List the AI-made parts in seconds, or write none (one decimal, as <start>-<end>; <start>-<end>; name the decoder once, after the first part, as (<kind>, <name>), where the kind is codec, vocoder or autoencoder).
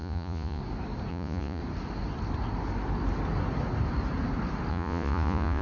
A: 0.0-0.6 (vocoder, Vocos); 1.1-1.6; 4.7-5.6